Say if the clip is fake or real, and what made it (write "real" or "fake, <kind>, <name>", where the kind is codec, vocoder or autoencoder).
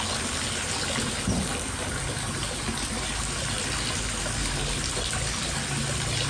real